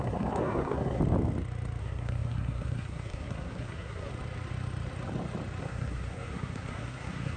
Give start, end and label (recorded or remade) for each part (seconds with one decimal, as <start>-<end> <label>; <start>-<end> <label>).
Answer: 0.0-1.0 remade; 1.0-1.8 recorded; 1.8-4.1 remade; 4.1-5.6 recorded; 5.6-7.4 remade